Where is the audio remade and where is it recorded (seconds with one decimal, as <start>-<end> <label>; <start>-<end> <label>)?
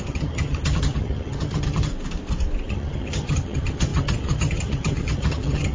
0.0-1.9 remade; 1.9-2.7 recorded; 2.7-5.7 remade